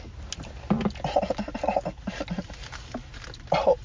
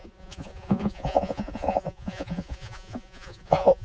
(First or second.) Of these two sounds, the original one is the first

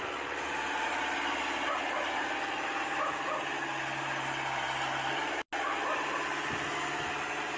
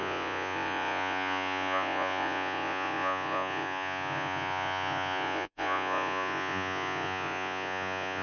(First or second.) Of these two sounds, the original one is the first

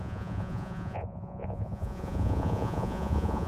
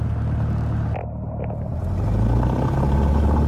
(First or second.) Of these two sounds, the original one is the second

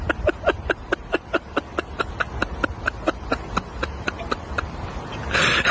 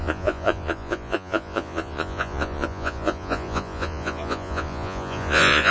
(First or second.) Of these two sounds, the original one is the first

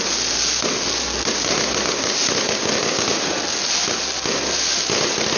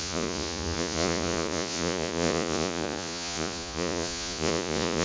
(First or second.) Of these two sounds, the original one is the first